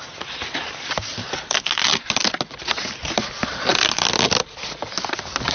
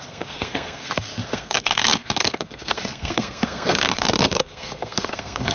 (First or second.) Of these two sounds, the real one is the first